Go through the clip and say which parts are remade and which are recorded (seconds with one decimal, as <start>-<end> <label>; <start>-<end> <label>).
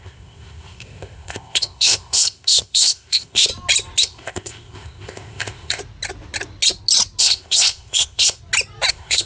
0.0-3.5 remade; 3.5-4.0 recorded; 4.0-5.8 remade; 5.8-7.2 recorded; 7.2-8.4 remade; 8.4-8.9 recorded; 8.9-9.3 remade